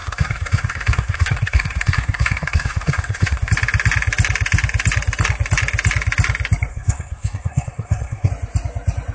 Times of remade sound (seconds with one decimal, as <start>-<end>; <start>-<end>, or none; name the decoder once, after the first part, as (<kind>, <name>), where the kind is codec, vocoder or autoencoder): 0.0-3.5 (codec, SNAC); 6.7-8.3